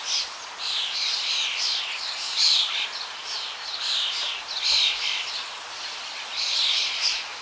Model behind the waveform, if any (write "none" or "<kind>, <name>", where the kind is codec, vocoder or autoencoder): none